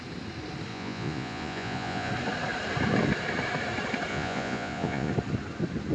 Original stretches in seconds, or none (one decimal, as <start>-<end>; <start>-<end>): 0.0-0.7; 2.1-4.1; 5.1-5.9